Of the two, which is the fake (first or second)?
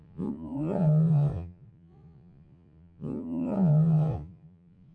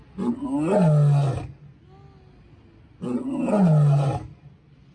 first